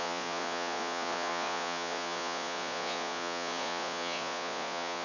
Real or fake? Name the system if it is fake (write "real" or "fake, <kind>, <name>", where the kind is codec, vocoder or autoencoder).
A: fake, vocoder, Vocos